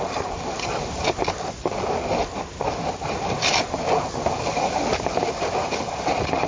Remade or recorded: recorded